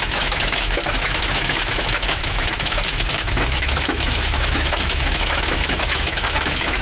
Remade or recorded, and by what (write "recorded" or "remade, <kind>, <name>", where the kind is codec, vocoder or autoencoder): remade, autoencoder, DAC-VAE